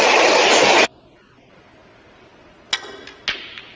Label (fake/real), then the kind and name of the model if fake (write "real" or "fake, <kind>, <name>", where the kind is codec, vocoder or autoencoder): real